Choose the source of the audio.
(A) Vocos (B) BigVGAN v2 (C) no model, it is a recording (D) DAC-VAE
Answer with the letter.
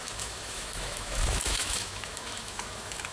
D